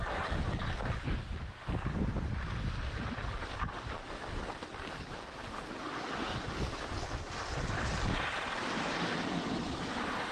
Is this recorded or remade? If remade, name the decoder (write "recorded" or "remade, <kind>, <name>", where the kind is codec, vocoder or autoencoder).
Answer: recorded